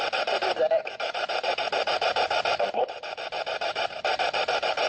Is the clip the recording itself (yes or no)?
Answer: no